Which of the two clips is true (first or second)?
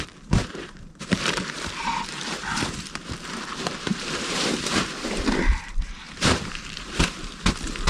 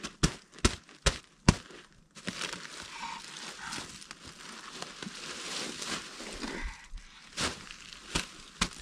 second